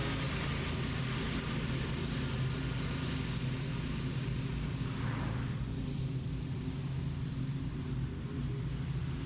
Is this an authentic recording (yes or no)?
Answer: yes